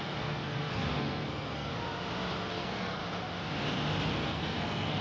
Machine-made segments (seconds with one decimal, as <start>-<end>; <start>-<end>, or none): 0.0-1.7; 2.5-3.0; 4.1-5.0